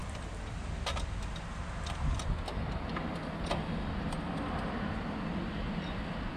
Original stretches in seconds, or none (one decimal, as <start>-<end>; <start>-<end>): 0.0-6.4